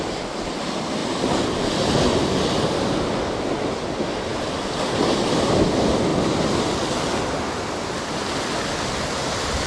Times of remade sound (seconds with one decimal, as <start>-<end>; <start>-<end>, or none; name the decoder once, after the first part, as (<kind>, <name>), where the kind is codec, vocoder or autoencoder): none